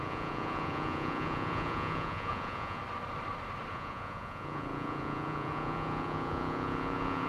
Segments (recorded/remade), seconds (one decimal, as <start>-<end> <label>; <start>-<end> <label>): 0.0-2.8 remade; 2.8-3.7 recorded; 3.7-7.3 remade